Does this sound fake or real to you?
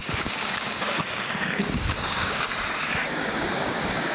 fake